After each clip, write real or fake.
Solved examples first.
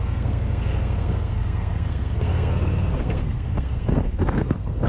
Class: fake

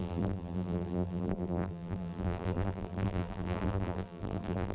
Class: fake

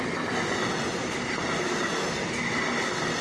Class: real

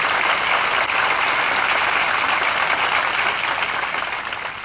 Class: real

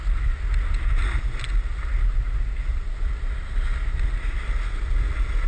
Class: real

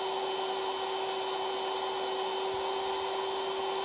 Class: real